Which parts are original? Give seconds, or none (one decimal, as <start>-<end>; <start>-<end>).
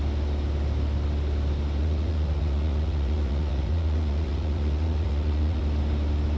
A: 0.0-1.8; 5.6-6.4